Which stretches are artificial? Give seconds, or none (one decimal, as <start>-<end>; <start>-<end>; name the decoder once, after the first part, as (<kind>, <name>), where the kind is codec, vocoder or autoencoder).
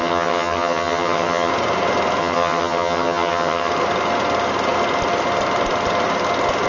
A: 0.0-1.5 (vocoder, HiFi-GAN); 2.2-3.7